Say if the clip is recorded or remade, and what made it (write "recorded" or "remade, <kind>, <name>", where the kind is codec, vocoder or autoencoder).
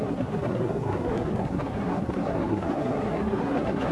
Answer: remade, codec, SNAC